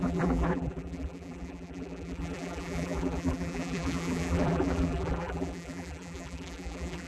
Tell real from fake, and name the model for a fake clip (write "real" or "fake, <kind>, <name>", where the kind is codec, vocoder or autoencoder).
fake, vocoder, BigVGAN v2